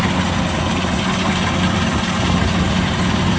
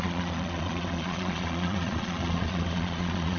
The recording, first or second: first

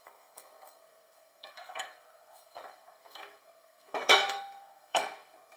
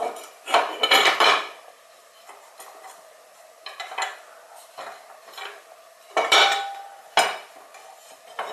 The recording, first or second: second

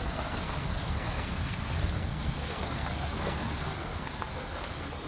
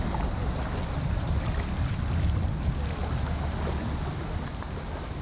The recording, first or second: second